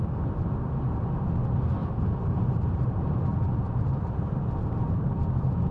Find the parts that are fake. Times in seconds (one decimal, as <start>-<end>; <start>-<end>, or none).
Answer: 1.8-5.2